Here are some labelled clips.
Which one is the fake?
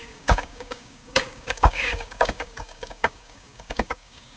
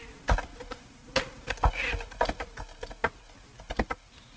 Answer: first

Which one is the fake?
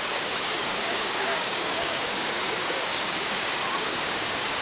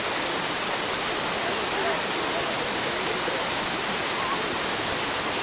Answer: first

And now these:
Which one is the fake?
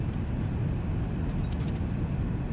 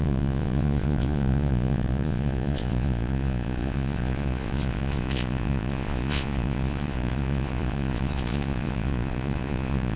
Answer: second